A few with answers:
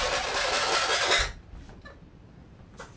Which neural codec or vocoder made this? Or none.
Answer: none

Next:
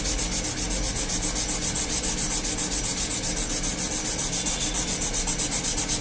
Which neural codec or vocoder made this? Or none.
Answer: none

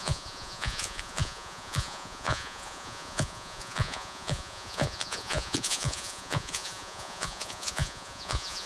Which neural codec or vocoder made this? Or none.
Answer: vocoder, Vocos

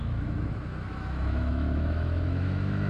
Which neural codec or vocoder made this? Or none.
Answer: autoencoder, DAC-VAE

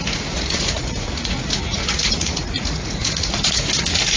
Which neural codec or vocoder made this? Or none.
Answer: vocoder, Vocos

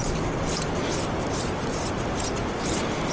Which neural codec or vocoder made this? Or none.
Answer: none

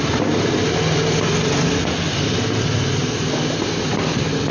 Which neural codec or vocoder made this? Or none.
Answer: none